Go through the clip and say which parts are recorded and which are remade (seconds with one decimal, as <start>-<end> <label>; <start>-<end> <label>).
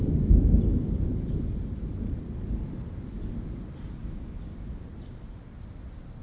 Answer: 0.0-0.7 recorded; 0.7-3.3 remade; 3.3-6.2 recorded